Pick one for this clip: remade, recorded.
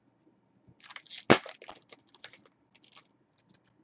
recorded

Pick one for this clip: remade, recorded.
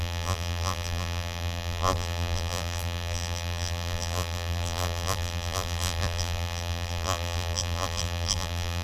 remade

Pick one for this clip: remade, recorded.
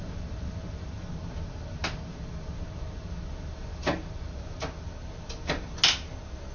recorded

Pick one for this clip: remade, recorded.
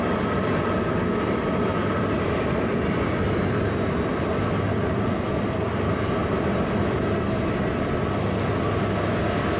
remade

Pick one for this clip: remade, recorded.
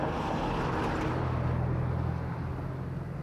recorded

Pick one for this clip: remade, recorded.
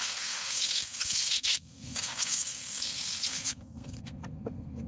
remade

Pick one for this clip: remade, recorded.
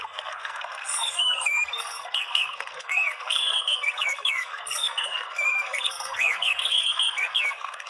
remade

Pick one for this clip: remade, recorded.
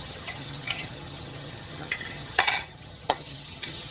remade